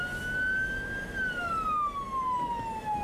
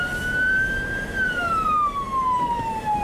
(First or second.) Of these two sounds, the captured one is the first